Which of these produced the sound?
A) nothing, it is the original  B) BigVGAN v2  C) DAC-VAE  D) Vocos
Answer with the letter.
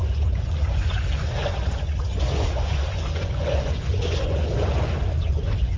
D